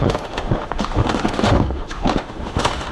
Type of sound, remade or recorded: remade